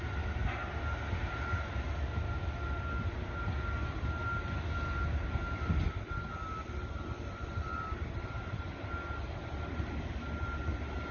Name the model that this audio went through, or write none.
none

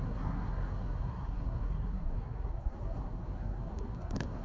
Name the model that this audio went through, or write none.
codec, SNAC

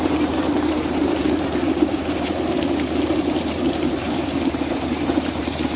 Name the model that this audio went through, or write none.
vocoder, BigVGAN v2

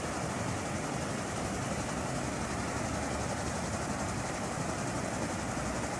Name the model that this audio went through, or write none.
none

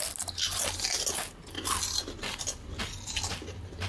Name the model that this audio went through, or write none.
none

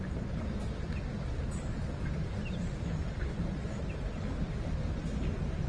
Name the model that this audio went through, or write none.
none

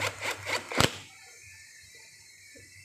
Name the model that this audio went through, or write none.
vocoder, BigVGAN v2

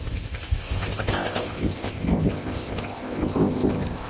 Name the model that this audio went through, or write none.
codec, ZipCodec